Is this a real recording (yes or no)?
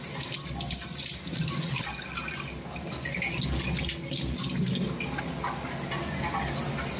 yes